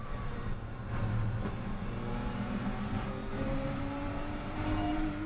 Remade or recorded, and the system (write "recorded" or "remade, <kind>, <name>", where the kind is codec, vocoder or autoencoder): remade, vocoder, BigVGAN v2